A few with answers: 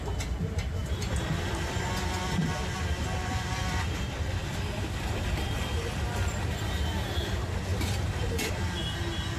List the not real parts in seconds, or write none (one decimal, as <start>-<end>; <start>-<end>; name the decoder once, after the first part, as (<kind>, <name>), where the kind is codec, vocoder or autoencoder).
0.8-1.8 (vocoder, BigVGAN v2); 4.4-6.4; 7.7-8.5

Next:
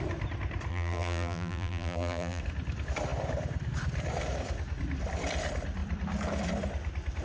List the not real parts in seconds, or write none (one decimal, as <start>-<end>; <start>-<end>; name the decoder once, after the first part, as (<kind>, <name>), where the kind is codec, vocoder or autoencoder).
0.7-2.4 (vocoder, BigVGAN v2)

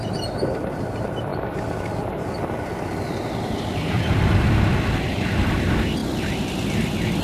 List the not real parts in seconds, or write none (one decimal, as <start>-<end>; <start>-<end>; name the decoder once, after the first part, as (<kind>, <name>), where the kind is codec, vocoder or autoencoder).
1.3-4.5 (vocoder, BigVGAN v2); 6.0-7.2